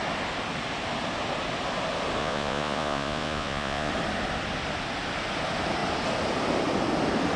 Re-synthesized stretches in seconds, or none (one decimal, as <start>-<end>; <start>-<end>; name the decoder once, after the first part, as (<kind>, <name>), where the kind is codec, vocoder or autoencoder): 2.2-3.9 (vocoder, Vocos)